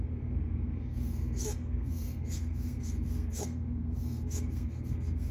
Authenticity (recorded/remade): remade